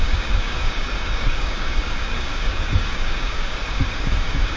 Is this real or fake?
fake